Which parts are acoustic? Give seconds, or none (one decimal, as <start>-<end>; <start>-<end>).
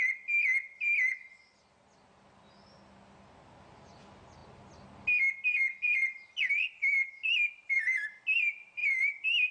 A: 0.0-8.8